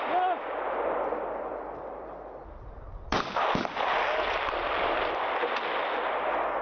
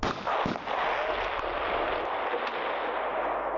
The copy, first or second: first